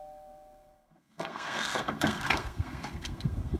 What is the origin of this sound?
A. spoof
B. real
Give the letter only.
A